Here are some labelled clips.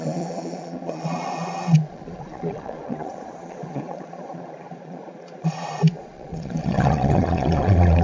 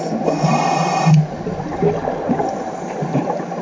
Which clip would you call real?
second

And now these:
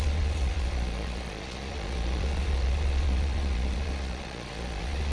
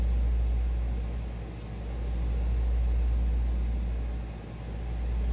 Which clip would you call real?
second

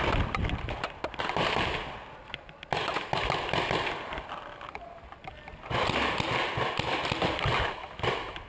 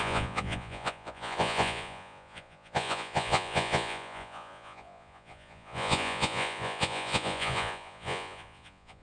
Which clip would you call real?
first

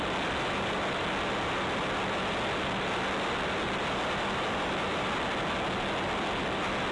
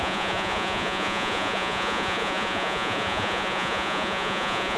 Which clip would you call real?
first